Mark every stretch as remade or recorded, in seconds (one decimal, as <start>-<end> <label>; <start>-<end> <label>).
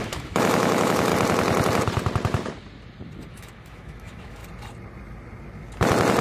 0.0-1.1 remade; 1.1-3.3 recorded; 3.3-4.4 remade; 4.4-6.2 recorded